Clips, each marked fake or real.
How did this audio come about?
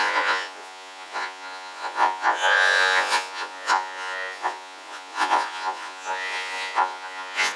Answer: fake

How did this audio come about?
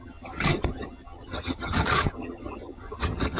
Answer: fake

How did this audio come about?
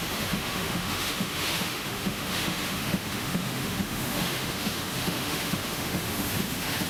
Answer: fake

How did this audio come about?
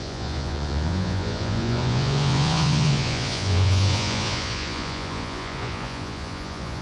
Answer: fake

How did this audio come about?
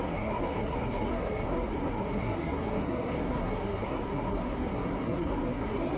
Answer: fake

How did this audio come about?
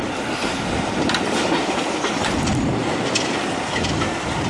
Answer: real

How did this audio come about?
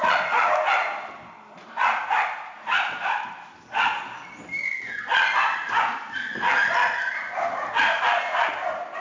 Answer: real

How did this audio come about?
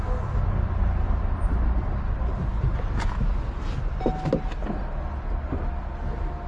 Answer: real